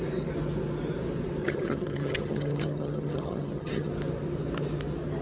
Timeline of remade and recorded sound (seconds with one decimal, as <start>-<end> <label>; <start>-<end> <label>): 0.0-1.4 recorded; 1.4-3.9 remade; 3.9-5.2 recorded